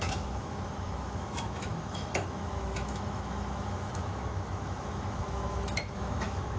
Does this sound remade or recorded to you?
remade